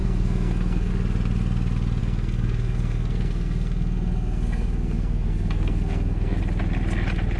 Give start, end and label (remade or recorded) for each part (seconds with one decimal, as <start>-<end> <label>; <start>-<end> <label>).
0.0-0.9 remade; 0.9-2.0 recorded; 2.0-6.4 remade; 6.4-7.4 recorded